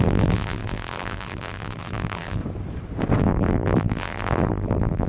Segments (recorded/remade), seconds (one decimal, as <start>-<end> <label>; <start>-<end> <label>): 0.0-2.4 remade; 2.4-3.2 recorded; 3.2-5.1 remade